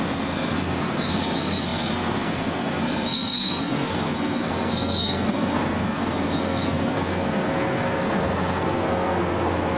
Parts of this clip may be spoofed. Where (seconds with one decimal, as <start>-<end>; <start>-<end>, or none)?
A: 0.0-9.8